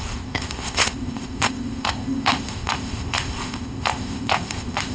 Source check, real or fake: fake